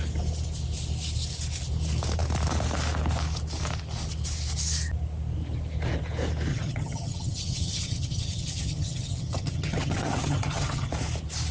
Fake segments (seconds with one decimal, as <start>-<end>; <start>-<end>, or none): 6.5-10.9